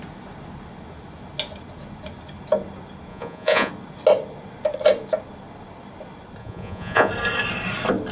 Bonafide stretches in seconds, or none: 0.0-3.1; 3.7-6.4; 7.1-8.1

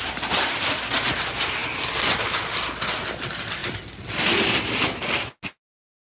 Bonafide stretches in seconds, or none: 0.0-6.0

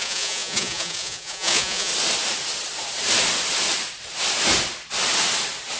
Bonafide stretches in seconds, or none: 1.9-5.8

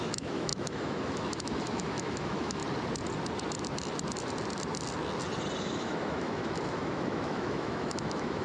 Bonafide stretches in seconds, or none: 2.6-5.6

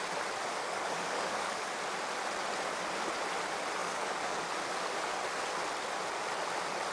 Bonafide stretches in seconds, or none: 0.0-0.6; 1.6-3.8; 4.5-6.9

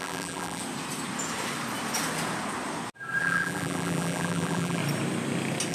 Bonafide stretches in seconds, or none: 0.6-3.2; 4.8-5.7

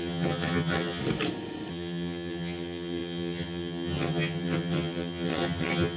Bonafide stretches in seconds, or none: 1.0-1.7